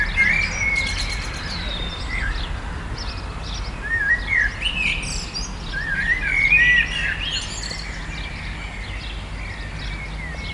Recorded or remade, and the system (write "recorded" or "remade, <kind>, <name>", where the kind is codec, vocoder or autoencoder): recorded